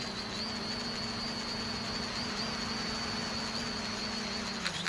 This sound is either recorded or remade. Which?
recorded